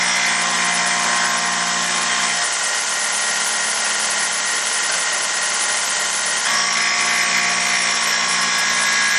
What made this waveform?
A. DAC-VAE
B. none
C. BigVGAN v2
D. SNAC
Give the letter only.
B